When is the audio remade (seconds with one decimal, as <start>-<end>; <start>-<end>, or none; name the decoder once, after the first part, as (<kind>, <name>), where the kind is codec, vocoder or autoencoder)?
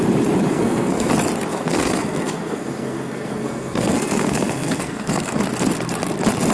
0.5-1.1 (codec, SNAC); 1.5-5.4